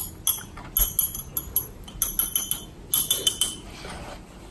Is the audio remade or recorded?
recorded